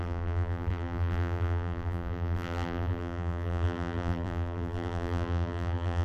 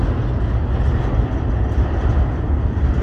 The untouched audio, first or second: second